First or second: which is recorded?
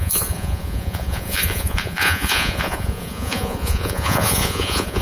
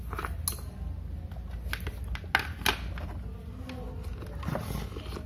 second